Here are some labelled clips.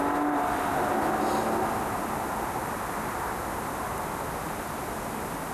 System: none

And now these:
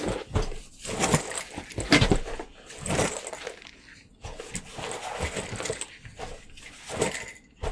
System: none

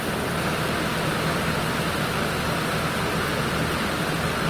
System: none